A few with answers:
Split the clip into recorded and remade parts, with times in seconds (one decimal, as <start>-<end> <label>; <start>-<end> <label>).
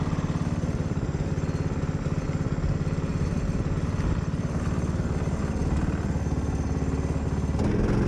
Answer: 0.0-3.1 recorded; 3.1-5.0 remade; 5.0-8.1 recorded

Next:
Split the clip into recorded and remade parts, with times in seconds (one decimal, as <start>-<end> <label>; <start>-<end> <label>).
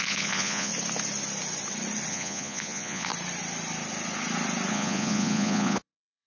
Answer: 0.0-0.7 remade; 0.7-2.1 recorded; 2.1-3.1 remade; 3.1-4.7 recorded; 4.7-6.3 remade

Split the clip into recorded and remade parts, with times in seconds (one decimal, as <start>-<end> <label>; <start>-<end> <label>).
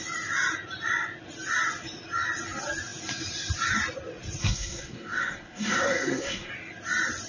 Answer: 0.0-4.4 recorded; 4.4-6.5 remade; 6.5-7.3 recorded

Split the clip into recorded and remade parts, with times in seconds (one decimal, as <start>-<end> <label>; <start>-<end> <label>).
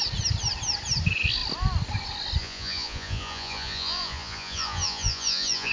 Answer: 0.0-2.4 recorded; 2.4-5.7 remade